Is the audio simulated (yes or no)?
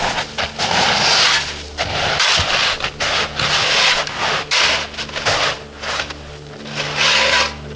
no